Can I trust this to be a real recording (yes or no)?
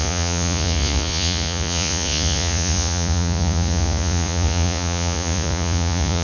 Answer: no